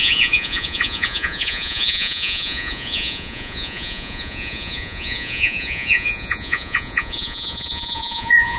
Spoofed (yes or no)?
yes